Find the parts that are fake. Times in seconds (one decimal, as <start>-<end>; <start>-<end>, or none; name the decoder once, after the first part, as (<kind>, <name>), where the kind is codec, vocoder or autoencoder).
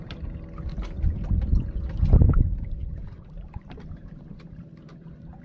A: 2.8-4.6 (vocoder, BigVGAN v2)